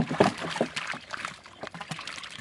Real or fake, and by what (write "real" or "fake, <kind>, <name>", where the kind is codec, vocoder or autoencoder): real